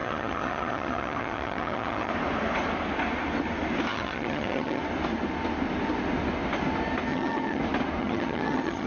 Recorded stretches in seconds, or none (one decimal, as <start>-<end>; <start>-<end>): 2.1-3.9; 4.8-7.1; 7.6-8.0